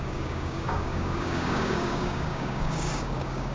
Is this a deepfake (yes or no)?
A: yes